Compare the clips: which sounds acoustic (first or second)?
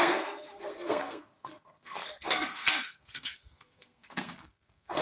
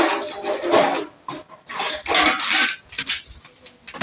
second